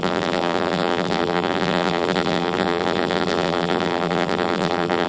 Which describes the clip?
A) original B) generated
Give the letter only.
B